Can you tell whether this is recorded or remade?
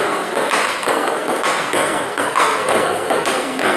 remade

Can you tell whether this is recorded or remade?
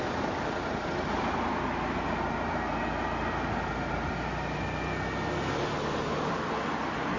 recorded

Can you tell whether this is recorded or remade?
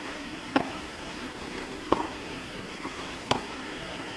remade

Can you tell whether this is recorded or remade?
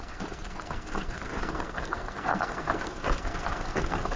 remade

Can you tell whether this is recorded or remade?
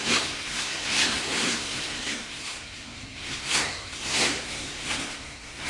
remade